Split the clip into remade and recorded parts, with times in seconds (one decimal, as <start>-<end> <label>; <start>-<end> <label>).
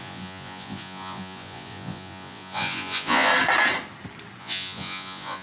0.0-3.3 remade; 3.3-4.4 recorded; 4.4-5.4 remade